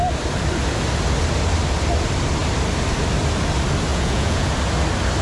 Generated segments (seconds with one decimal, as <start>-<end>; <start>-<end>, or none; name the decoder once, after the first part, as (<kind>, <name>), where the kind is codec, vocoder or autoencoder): 3.9-4.5 (vocoder, Vocos)